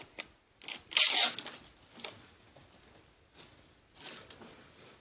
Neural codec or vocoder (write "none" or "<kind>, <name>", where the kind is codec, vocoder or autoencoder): none